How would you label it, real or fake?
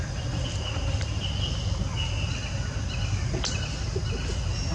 real